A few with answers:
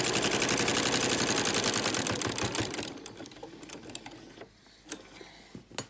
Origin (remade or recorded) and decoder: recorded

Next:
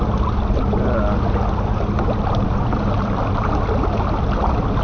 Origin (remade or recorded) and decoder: recorded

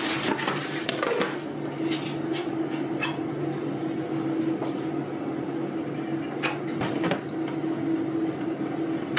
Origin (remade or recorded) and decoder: recorded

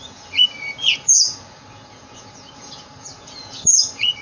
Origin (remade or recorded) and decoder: remade, vocoder, Vocos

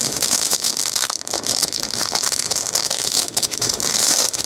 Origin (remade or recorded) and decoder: remade, autoencoder, DAC-VAE